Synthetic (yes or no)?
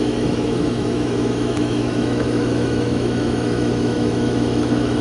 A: yes